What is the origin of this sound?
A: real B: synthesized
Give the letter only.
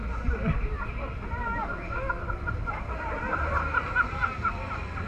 A